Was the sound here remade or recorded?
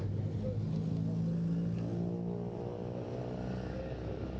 recorded